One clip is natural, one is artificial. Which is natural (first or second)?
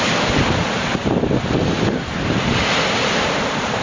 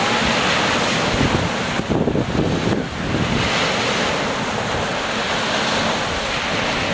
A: second